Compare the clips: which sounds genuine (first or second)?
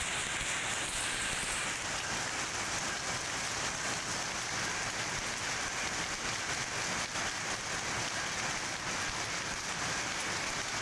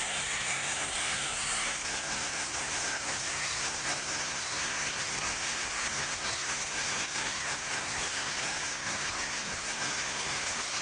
first